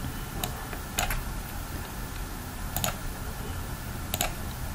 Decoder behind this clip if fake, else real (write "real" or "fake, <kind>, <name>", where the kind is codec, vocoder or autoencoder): real